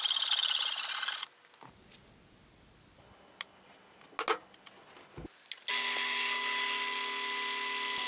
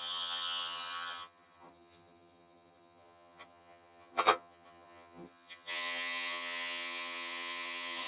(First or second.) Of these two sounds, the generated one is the second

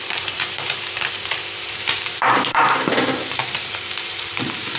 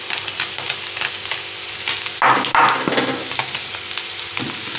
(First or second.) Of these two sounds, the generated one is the first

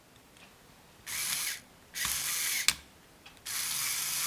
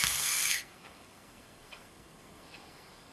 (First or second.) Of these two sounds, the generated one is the second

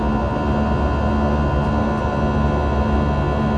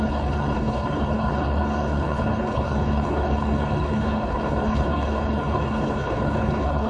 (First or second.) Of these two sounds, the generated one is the second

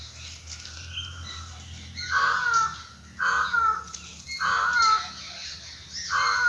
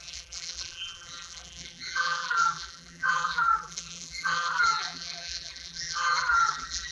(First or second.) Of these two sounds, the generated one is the second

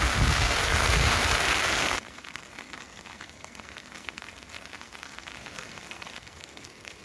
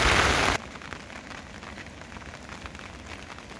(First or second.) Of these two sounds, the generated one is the first